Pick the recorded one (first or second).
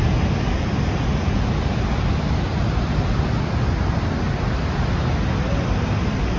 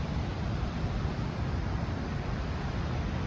first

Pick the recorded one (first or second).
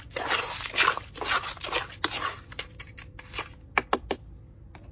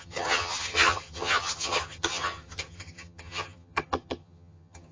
first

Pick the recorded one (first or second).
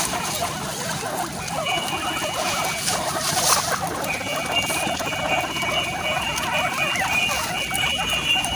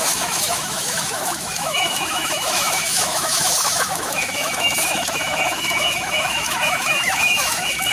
first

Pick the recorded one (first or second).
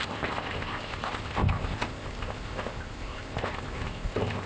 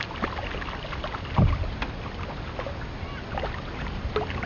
second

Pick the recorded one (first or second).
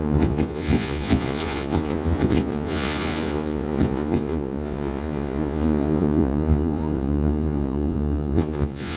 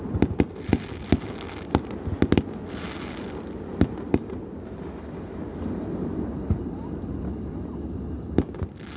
second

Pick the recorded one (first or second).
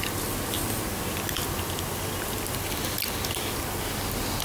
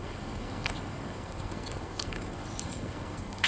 first